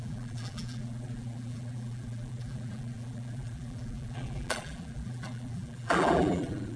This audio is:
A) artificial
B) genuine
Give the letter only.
A